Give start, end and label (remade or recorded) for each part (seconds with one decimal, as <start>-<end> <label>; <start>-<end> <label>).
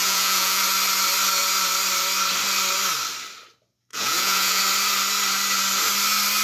0.0-0.6 remade; 0.6-3.9 recorded; 3.9-4.6 remade; 4.6-6.4 recorded